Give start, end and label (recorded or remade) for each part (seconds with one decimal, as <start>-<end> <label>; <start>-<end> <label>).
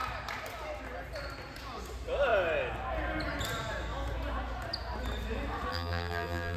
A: 0.0-5.7 recorded; 5.7-6.6 remade